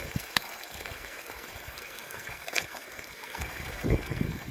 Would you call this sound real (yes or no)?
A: no